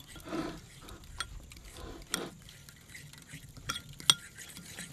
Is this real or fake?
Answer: real